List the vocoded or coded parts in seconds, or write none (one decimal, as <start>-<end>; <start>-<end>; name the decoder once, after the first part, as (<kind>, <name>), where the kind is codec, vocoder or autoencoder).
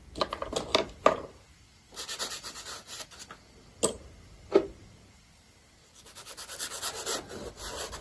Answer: none